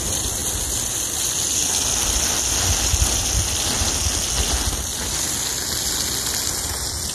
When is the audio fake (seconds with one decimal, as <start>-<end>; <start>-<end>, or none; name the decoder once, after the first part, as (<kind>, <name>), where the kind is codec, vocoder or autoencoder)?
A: none